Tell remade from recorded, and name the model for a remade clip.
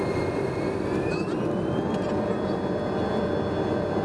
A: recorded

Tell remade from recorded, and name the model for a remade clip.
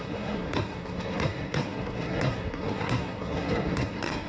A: remade, codec, SNAC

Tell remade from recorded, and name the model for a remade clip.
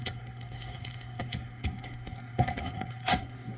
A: remade, codec, SNAC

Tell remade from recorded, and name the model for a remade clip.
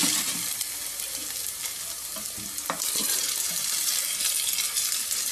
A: recorded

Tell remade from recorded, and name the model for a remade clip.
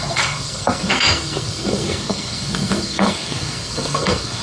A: remade, codec, SNAC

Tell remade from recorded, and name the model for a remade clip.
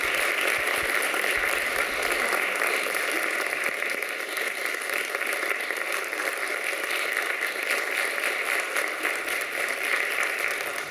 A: recorded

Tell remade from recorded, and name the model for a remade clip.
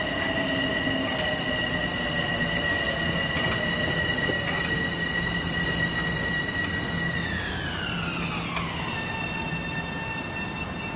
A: recorded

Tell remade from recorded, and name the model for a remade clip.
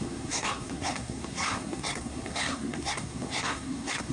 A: remade, codec, SNAC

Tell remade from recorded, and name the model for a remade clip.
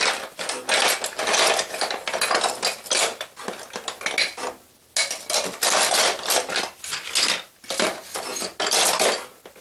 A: recorded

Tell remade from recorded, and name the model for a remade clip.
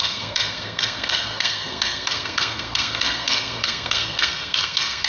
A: remade, codec, SNAC